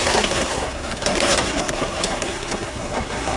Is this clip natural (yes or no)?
no